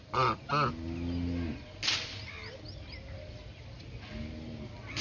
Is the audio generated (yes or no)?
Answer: no